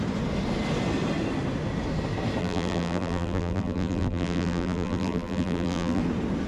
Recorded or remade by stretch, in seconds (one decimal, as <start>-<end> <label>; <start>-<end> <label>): 0.0-2.4 recorded; 2.4-6.0 remade; 6.0-6.5 recorded